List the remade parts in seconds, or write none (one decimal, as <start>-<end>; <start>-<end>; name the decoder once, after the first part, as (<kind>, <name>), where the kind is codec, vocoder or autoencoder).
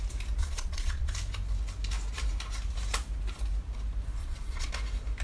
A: 0.4-1.1 (vocoder, Vocos); 4.2-4.7